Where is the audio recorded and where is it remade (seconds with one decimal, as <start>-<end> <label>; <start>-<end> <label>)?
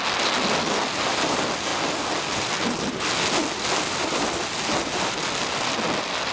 0.0-6.3 recorded